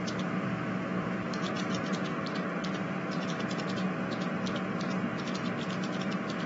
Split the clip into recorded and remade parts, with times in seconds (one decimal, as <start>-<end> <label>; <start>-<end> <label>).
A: 0.0-0.5 recorded; 0.5-1.5 remade; 1.5-6.5 recorded